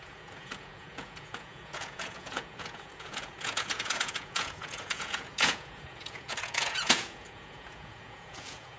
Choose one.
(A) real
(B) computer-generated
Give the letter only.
B